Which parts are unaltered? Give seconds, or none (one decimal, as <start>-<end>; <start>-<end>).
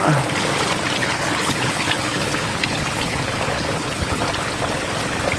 0.0-1.0; 4.2-5.4